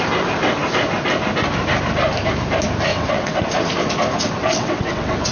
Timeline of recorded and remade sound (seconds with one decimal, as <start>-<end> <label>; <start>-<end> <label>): 0.0-2.9 recorded; 2.9-3.4 remade; 3.4-4.4 recorded; 4.4-5.3 remade